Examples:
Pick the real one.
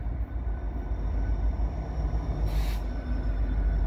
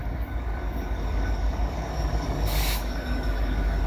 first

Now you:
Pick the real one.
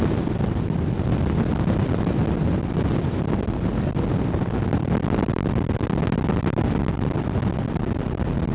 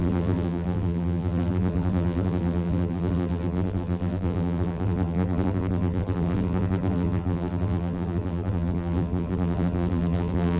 first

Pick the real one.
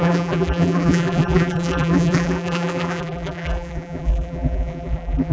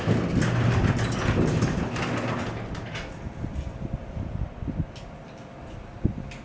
second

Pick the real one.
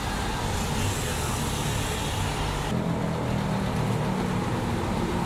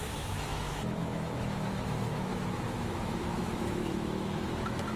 first